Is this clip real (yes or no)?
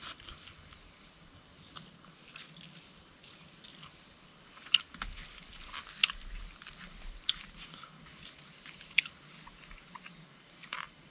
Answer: yes